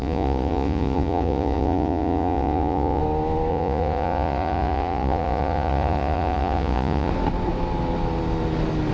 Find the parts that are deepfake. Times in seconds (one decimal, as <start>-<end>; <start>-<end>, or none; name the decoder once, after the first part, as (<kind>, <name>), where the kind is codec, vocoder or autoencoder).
0.0-3.0 (vocoder, Vocos); 3.5-7.1